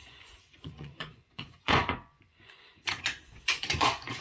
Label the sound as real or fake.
fake